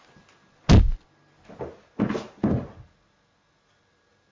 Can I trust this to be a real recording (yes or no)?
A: yes